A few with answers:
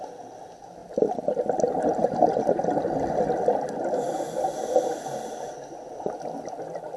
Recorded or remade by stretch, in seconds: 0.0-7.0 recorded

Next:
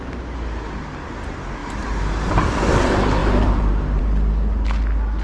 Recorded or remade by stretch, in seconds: 0.0-1.6 recorded; 1.6-2.6 remade; 2.6-3.2 recorded; 3.2-4.0 remade; 4.0-5.2 recorded

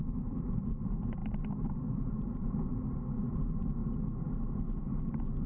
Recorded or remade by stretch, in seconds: 0.0-2.7 remade; 2.7-3.3 recorded; 3.3-3.8 remade; 3.8-4.8 recorded; 4.8-5.5 remade